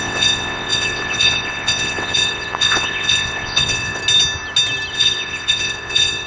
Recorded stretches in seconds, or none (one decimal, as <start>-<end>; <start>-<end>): 4.0-4.9